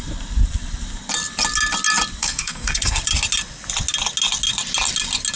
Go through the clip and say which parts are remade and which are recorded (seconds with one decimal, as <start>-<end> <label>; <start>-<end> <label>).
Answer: 0.0-2.2 recorded; 2.2-3.0 remade; 3.0-5.4 recorded